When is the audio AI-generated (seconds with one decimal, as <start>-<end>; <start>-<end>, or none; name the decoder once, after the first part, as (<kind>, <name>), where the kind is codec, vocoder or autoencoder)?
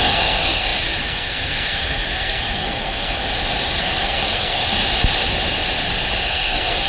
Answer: 0.0-3.2 (codec, SNAC); 3.8-4.6; 6.2-6.9